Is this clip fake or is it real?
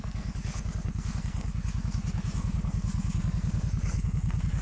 fake